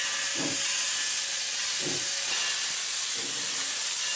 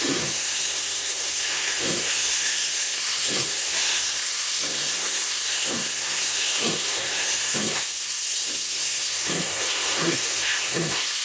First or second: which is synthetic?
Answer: second